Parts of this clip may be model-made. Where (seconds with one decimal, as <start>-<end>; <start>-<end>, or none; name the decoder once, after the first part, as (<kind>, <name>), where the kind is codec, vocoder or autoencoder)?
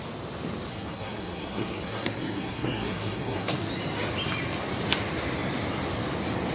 0.7-3.6 (codec, SNAC)